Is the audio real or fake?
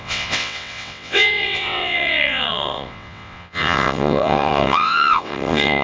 fake